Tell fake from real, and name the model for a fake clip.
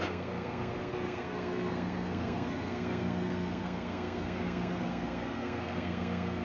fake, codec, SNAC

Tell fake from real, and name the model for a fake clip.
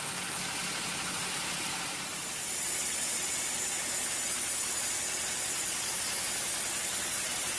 real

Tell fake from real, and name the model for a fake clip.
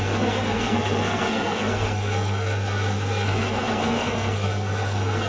fake, codec, SNAC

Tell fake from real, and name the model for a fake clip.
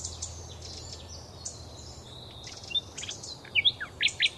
real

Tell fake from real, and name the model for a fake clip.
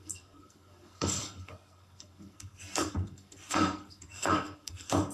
fake, codec, SNAC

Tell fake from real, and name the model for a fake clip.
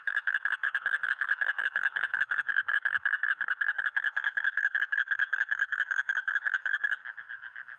fake, codec, SNAC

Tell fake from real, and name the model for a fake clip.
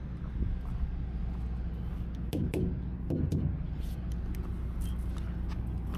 real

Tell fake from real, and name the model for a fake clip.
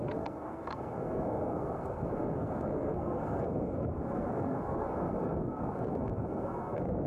fake, codec, SNAC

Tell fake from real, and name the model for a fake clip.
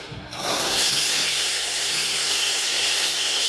fake, codec, SNAC